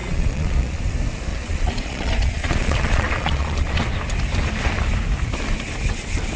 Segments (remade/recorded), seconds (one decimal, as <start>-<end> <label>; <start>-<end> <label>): 0.0-0.8 remade; 0.8-1.3 recorded; 1.3-3.8 remade; 3.8-6.4 recorded